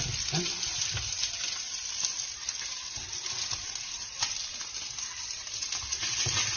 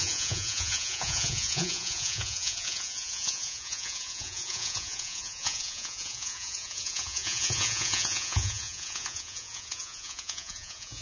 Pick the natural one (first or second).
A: first